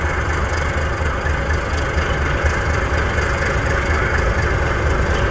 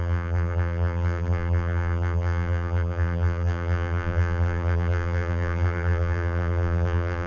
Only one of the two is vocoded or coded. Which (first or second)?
second